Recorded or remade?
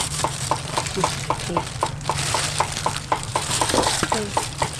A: remade